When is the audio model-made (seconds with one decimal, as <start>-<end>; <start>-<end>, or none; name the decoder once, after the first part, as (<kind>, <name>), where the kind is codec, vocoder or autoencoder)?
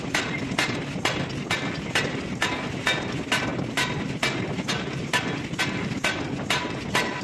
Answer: none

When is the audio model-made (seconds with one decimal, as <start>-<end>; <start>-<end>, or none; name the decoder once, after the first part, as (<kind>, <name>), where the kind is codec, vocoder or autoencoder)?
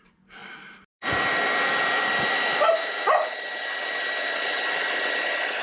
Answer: none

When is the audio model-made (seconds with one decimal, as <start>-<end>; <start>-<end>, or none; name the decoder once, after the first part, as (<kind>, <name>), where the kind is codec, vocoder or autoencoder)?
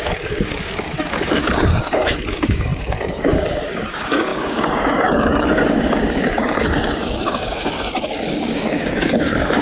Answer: 0.0-9.6 (codec, DAC)